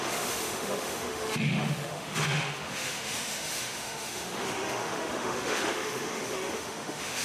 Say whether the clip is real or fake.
fake